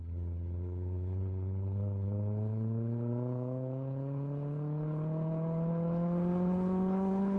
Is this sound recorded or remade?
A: remade